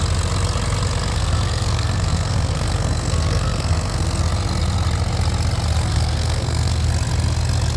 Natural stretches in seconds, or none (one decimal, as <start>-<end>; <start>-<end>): 0.0-1.1; 4.3-5.8; 6.9-7.8